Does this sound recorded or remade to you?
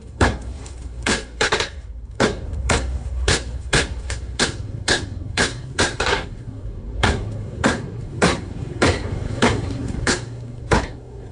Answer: remade